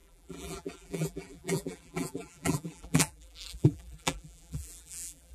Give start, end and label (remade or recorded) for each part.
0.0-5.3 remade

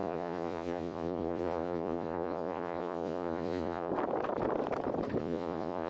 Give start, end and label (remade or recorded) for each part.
0.0-3.9 remade; 3.9-5.2 recorded; 5.2-5.9 remade

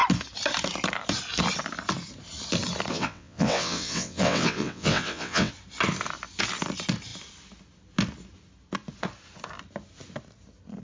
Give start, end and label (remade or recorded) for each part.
0.0-2.9 recorded; 2.9-5.5 remade; 5.5-10.8 recorded

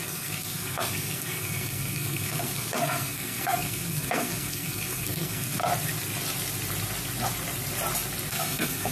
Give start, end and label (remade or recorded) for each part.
0.0-5.6 remade; 5.6-8.3 recorded; 8.3-8.9 remade

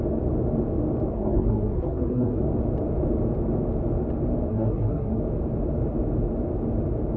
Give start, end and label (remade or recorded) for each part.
0.0-1.1 recorded; 1.1-2.4 remade; 2.4-4.5 recorded; 4.5-5.2 remade; 5.2-7.2 recorded